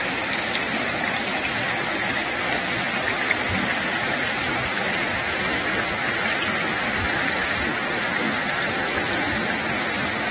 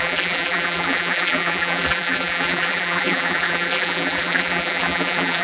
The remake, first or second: second